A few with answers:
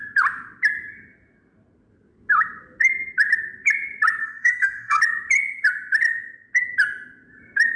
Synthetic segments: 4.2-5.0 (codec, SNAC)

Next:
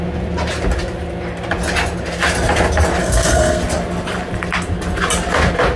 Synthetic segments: 3.0-3.6 (codec, SNAC)

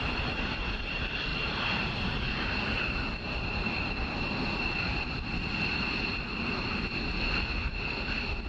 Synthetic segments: none

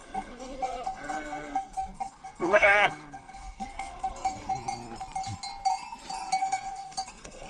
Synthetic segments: 0.0-4.5 (codec, SNAC); 6.4-7.5

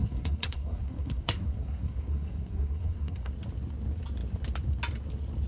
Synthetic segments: 0.0-3.3 (codec, SNAC)

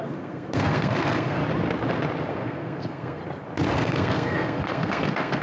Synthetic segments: 0.0-1.4 (codec, SNAC); 2.3-3.2; 3.7-5.4